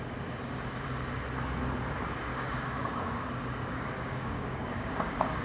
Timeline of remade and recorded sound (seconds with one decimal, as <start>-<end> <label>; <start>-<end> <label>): 0.0-2.3 recorded; 2.3-5.4 remade